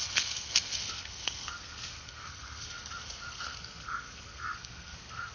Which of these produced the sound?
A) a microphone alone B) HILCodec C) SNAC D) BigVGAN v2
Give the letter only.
C